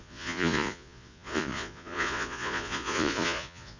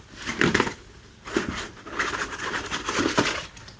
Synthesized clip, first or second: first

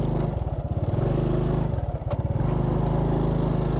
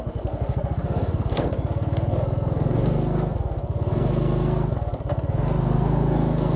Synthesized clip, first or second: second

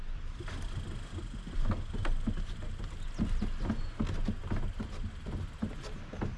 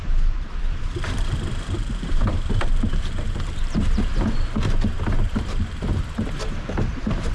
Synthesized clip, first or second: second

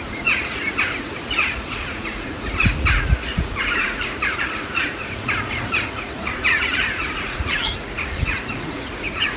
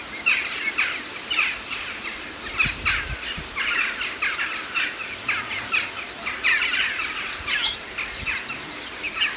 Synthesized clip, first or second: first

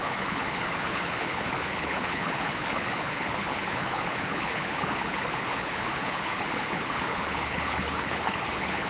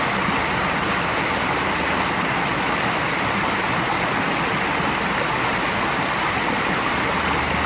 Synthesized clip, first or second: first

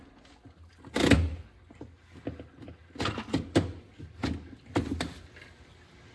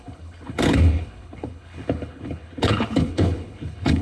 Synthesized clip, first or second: second